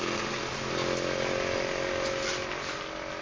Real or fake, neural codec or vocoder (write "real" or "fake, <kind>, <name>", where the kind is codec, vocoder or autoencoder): real